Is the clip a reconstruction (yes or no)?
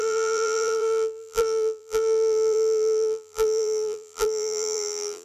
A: yes